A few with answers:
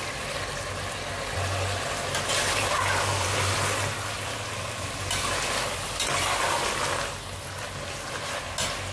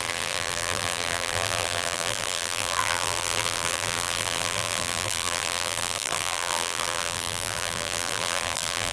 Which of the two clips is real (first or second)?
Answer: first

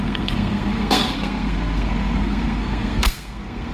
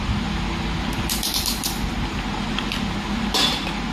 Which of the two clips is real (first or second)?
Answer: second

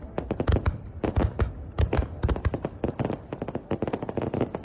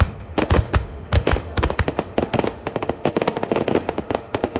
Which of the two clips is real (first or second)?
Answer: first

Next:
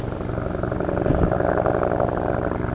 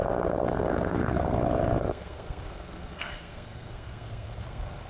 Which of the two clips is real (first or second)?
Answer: first